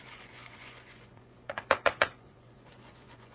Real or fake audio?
fake